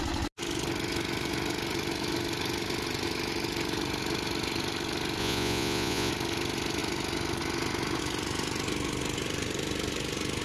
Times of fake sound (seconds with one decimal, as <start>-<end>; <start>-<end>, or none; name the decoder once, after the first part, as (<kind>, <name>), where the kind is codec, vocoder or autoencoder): 5.2-6.1 (vocoder, Vocos)